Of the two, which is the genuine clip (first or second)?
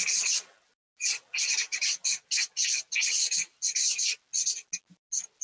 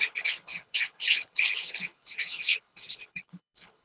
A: first